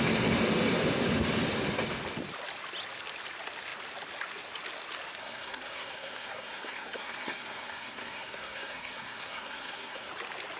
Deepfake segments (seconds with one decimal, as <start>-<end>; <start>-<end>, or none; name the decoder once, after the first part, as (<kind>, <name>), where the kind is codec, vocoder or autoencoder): 5.2-10.1 (codec, SNAC)